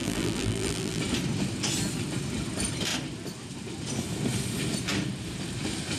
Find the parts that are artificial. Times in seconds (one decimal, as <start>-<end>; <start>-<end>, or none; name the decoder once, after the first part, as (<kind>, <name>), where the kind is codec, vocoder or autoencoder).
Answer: 0.0-1.0 (vocoder, BigVGAN v2)